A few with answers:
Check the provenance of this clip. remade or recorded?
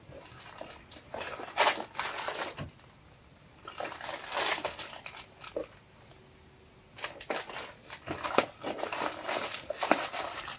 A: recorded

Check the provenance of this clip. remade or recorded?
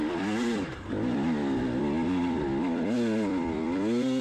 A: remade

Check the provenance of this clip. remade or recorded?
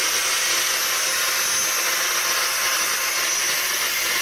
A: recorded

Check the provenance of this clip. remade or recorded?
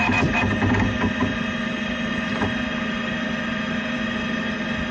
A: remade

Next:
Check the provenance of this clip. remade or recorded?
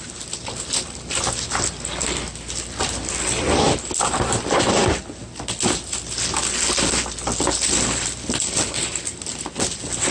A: recorded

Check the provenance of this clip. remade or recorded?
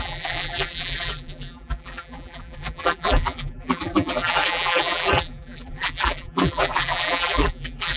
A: remade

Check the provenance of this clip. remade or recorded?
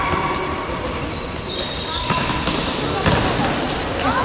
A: remade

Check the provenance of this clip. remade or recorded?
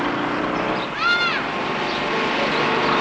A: recorded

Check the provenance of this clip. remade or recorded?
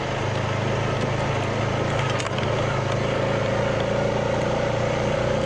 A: recorded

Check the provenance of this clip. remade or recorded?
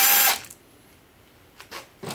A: recorded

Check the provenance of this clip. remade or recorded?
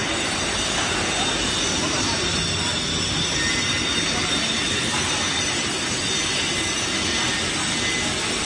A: recorded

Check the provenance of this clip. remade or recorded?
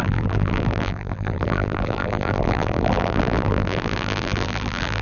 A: remade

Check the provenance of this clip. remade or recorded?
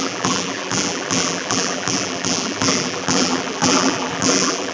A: remade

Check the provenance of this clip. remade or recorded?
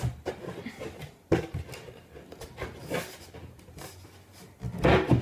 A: recorded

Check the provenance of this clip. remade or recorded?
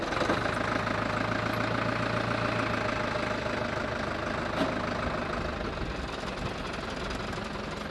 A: recorded